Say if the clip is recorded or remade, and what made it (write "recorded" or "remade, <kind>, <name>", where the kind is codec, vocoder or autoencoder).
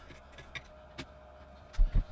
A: recorded